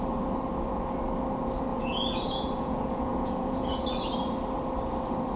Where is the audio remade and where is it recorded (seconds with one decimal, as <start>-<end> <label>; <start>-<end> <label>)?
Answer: 0.0-1.7 recorded; 1.7-3.9 remade; 3.9-5.4 recorded